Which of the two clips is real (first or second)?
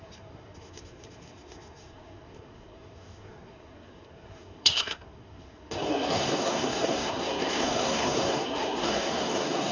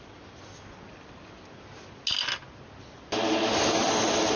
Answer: second